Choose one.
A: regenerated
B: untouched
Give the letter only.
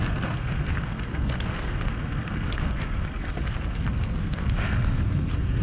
A